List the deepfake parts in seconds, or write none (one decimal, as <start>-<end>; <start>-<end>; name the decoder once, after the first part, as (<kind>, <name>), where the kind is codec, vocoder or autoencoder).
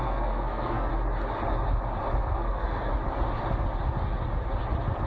0.0-0.9 (codec, SNAC); 2.2-2.9